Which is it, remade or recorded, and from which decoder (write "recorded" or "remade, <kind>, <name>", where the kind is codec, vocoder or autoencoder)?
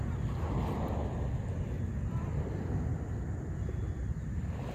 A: recorded